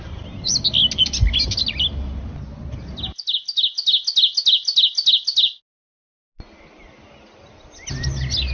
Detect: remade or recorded recorded